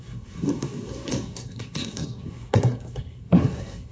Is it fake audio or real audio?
fake